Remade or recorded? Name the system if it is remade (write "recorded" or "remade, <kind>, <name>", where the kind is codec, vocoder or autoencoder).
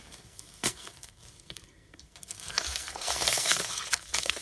remade, codec, SNAC